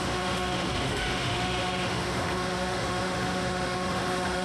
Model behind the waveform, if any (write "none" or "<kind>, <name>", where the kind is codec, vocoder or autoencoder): autoencoder, DAC-VAE